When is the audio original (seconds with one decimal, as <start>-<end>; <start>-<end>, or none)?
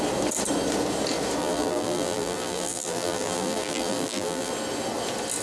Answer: 0.0-1.4; 4.5-5.4